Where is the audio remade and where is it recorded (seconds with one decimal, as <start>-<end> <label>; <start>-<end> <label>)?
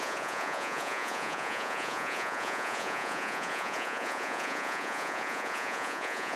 0.0-6.4 remade